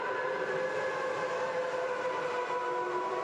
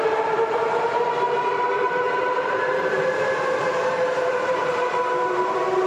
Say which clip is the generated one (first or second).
second